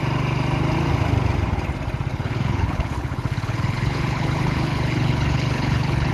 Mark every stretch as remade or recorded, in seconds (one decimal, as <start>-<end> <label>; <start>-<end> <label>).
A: 0.0-2.1 recorded; 2.1-6.1 remade